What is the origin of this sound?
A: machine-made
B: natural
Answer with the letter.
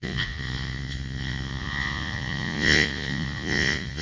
A